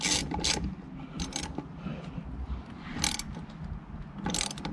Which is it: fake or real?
real